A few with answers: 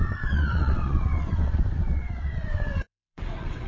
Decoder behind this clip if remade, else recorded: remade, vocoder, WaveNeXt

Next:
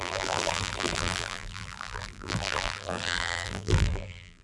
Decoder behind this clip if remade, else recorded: remade, vocoder, BigVGAN v2